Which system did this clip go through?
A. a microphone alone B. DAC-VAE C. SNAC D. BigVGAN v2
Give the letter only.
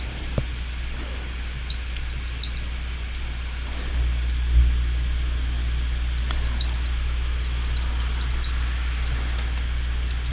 A